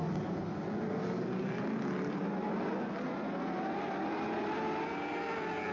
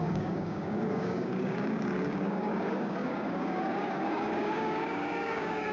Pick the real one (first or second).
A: first